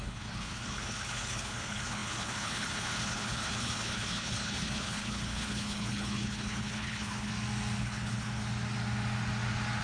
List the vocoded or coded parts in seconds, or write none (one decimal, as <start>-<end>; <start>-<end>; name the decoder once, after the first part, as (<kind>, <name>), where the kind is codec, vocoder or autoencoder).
0.0-7.3 (codec, HILCodec); 7.8-8.4